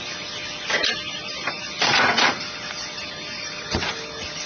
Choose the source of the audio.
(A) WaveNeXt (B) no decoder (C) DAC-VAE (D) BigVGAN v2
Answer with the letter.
B